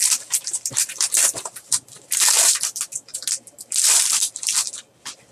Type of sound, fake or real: fake